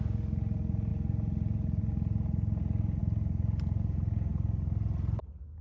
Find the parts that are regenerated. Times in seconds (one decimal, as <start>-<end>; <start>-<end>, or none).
none